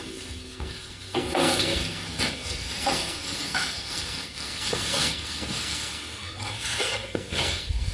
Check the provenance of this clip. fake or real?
fake